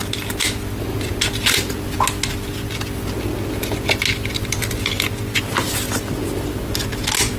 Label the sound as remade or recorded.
recorded